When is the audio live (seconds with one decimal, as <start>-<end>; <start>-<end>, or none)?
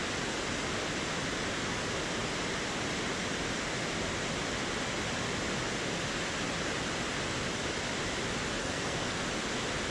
0.0-8.6; 9.2-9.9